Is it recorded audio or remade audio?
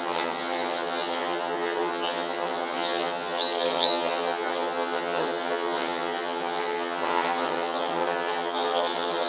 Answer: remade